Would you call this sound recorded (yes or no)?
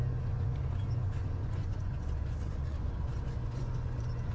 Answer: no